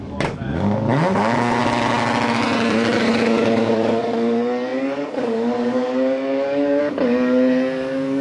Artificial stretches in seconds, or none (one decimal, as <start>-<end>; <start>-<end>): 0.0-1.6; 3.1-8.2